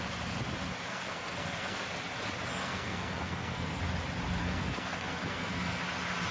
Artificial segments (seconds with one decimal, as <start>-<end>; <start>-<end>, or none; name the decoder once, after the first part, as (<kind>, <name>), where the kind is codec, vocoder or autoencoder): 0.9-1.8 (codec, SNAC); 2.5-3.8; 4.4-5.8